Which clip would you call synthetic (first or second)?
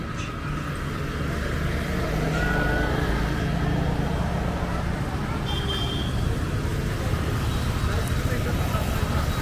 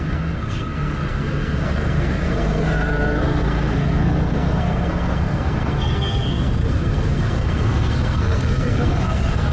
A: second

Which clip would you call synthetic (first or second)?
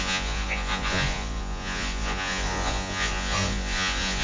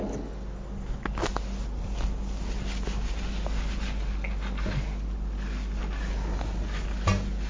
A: first